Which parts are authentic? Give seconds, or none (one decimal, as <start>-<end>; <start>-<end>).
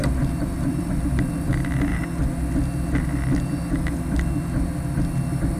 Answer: 0.0-0.4; 0.9-5.6